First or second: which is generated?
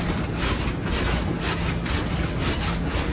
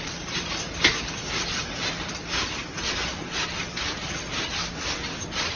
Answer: second